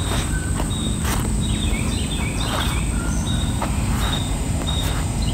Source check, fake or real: fake